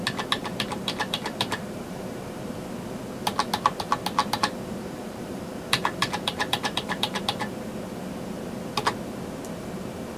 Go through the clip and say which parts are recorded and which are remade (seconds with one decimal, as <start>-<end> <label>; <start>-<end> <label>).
0.0-0.4 recorded; 0.4-2.5 remade; 2.5-4.2 recorded; 4.2-7.2 remade; 7.2-10.2 recorded